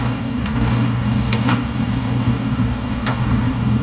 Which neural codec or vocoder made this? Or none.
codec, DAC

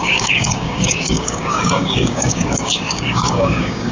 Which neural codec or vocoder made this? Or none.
codec, DAC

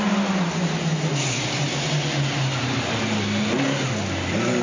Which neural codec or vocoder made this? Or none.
none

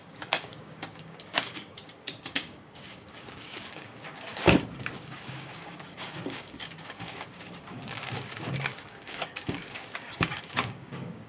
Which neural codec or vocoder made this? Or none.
codec, DAC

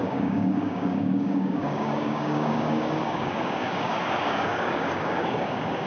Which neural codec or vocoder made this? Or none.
codec, DAC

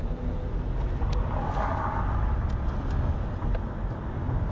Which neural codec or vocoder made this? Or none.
none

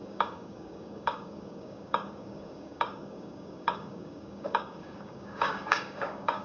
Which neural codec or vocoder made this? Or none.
codec, DAC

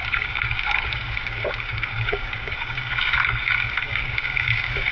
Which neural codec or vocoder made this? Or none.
codec, DAC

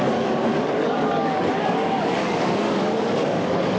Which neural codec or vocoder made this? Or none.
codec, DAC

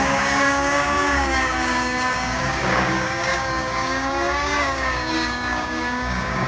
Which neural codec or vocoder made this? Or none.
codec, DAC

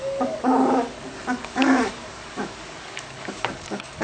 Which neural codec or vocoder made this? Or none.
codec, DAC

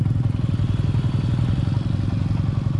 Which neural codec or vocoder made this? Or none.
none